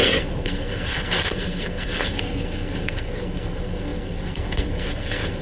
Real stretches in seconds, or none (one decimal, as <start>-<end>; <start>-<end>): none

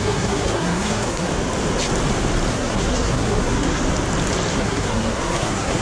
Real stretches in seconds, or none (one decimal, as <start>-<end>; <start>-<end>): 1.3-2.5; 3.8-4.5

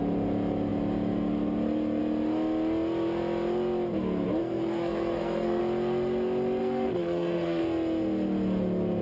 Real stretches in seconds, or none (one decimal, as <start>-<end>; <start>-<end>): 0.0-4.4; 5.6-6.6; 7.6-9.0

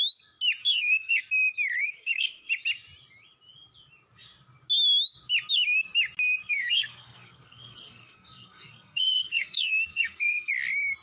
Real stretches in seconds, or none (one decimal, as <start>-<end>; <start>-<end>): 0.0-0.6; 1.2-1.8; 2.5-6.4; 10.5-11.0